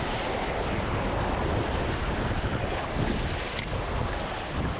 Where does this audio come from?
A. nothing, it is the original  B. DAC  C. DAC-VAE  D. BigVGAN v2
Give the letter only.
A